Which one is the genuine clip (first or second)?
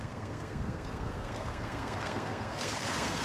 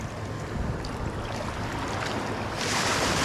second